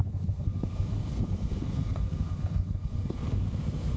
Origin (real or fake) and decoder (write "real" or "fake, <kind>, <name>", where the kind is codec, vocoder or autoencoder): fake, codec, SNAC